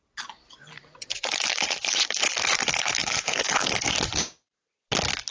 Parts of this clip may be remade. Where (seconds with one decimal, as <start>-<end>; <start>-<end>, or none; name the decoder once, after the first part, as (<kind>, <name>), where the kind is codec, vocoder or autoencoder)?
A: 3.0-3.7 (codec, HILCodec)

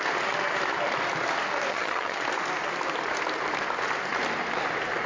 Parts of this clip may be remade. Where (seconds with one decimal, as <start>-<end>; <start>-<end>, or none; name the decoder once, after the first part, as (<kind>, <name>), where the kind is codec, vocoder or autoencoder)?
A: 1.7-2.2 (vocoder, HiFi-GAN)

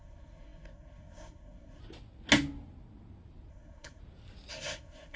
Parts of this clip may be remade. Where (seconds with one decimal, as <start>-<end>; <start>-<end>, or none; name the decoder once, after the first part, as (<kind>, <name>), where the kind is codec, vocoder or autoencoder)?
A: 0.0-1.8 (codec, SNAC); 3.5-4.0; 4.5-5.2

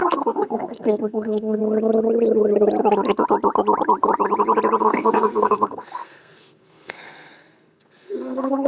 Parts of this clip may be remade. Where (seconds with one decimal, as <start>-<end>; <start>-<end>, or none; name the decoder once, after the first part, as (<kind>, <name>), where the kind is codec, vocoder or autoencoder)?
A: 0.0-1.6 (codec, SNAC); 4.8-8.7

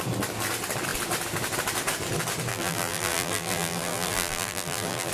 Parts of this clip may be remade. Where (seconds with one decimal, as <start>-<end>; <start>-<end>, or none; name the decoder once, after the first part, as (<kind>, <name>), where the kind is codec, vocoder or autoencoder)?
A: 2.5-5.1 (vocoder, BigVGAN v2)